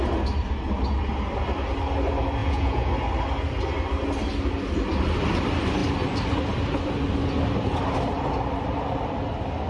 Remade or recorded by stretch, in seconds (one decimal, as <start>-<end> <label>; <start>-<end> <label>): 0.0-2.4 recorded; 2.4-2.9 remade; 2.9-9.7 recorded